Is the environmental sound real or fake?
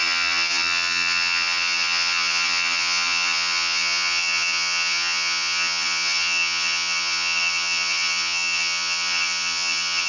fake